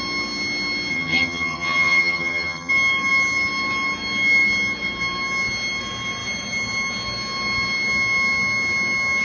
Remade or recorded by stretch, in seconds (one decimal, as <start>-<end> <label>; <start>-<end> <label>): 0.0-0.9 recorded; 0.9-2.7 remade; 2.7-9.2 recorded